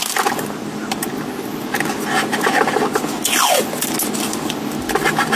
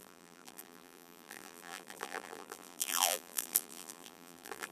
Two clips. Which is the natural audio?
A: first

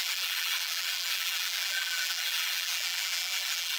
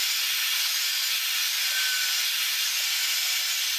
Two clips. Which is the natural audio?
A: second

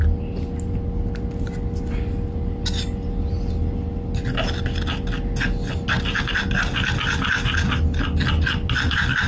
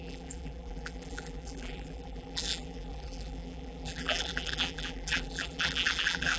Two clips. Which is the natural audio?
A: first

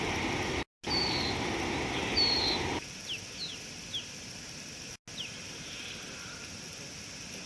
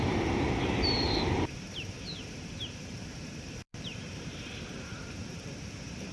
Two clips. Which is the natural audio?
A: first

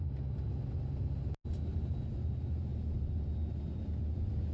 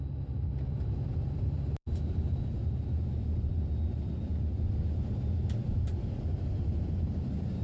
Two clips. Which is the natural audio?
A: first